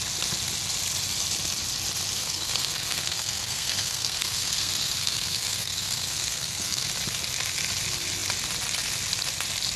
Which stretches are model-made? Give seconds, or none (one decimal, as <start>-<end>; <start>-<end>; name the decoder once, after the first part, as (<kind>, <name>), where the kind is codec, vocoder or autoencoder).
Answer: 2.2-6.9 (codec, SNAC)